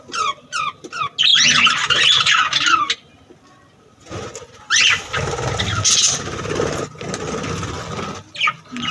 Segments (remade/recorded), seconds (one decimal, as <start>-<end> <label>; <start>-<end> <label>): 0.0-8.9 recorded